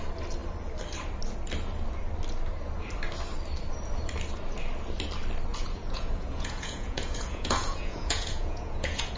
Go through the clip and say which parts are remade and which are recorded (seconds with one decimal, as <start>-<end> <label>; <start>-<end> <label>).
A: 0.0-5.5 recorded; 5.5-9.2 remade